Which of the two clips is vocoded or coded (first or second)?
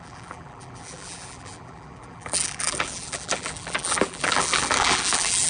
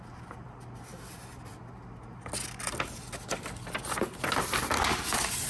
first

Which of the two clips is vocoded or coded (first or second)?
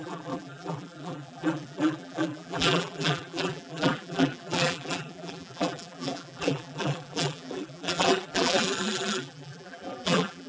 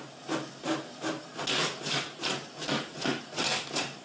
first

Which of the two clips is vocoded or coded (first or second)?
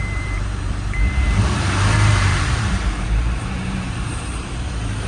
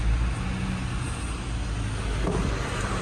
first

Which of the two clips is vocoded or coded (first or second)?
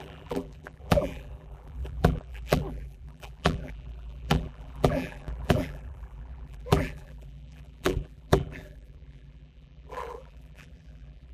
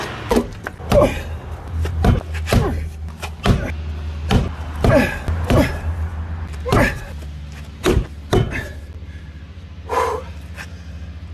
first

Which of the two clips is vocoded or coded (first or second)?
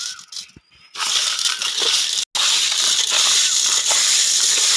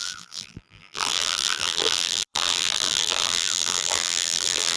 second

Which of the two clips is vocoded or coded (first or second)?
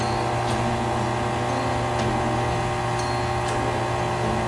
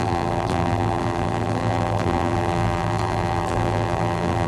second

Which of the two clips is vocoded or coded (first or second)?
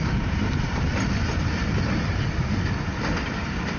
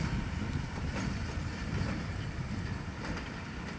second